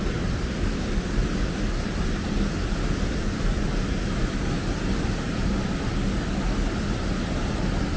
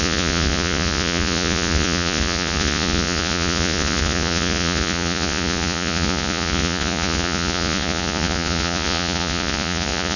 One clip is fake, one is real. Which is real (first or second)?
first